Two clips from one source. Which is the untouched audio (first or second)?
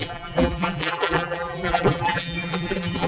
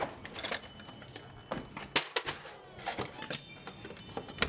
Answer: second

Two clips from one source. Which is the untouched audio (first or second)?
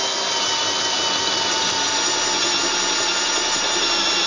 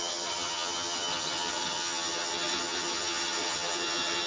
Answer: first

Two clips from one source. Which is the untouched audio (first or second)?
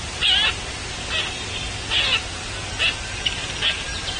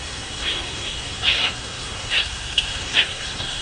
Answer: first